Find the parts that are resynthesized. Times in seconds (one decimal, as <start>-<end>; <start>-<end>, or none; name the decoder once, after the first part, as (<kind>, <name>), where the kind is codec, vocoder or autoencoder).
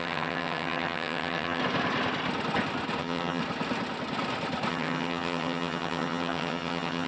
0.0-1.6 (vocoder, HiFi-GAN); 3.0-3.4; 4.7-7.1